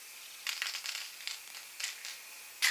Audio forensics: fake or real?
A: real